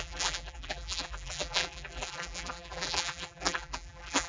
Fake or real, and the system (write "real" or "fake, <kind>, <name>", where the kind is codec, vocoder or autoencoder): fake, vocoder, BigVGAN v2